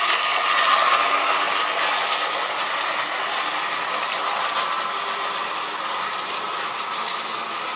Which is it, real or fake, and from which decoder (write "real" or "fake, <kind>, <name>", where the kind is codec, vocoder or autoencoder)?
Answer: real